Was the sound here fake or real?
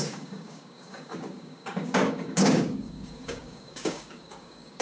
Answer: fake